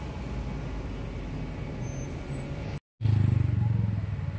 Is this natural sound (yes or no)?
yes